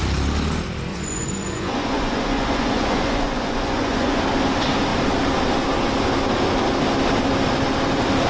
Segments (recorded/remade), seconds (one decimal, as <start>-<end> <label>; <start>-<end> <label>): 0.0-0.9 recorded; 0.9-4.2 remade; 4.2-8.3 recorded